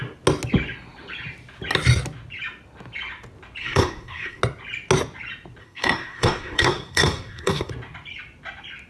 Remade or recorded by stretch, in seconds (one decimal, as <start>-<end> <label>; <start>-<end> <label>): 0.0-3.6 recorded; 3.6-4.4 remade; 4.4-5.6 recorded; 5.6-7.7 remade; 7.7-8.9 recorded